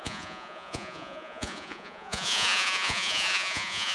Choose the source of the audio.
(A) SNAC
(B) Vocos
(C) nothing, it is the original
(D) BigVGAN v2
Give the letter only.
B